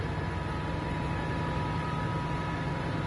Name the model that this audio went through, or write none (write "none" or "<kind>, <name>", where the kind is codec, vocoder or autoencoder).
none